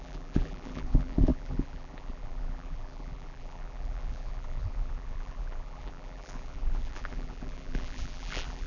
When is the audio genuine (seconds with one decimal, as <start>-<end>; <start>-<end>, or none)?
none